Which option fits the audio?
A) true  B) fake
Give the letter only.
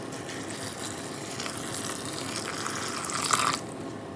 A